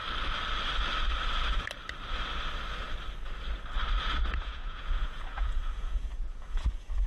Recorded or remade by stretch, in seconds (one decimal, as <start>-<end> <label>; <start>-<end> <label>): 0.0-4.3 recorded; 4.3-7.1 remade